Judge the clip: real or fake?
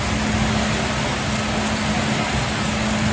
real